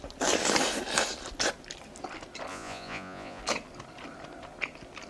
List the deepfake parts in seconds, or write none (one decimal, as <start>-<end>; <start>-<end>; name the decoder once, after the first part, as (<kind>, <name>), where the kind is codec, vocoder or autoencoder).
2.5-3.4 (vocoder, Vocos)